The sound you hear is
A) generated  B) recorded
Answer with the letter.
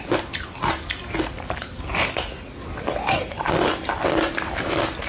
B